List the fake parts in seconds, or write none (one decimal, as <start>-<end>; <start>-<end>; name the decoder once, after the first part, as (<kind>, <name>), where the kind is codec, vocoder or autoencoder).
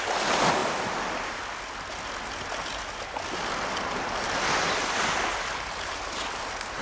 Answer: none